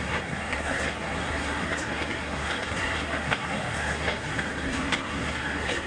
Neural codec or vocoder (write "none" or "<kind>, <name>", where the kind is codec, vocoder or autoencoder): codec, SNAC